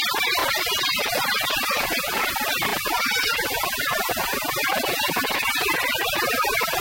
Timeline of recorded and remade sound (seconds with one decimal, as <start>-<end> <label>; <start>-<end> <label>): 0.0-0.4 recorded; 0.4-2.3 remade; 2.3-2.7 recorded; 2.7-6.8 remade